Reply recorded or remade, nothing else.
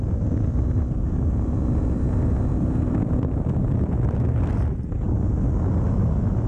recorded